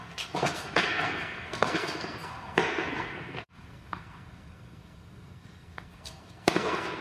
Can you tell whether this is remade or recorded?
remade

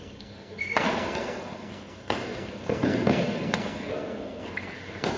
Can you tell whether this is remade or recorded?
remade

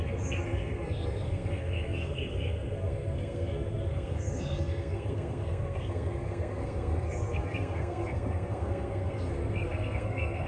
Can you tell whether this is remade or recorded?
remade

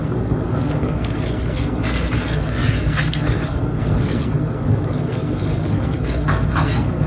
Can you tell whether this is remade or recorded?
remade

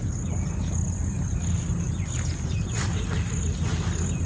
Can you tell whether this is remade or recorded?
recorded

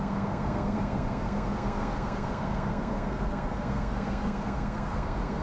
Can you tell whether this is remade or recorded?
remade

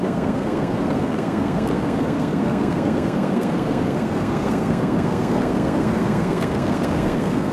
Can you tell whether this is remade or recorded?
remade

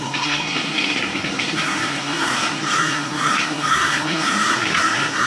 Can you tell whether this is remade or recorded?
remade